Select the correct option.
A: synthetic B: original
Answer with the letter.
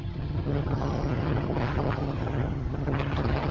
A